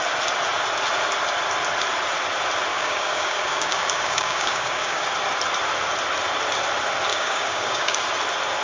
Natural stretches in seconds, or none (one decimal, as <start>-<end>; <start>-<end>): 0.0-2.7; 5.0-7.1; 8.0-8.6